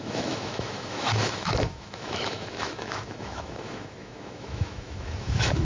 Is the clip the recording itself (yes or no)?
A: no